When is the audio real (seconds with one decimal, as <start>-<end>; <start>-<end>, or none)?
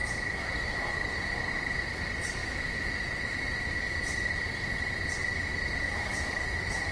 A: 1.3-2.4; 4.3-5.2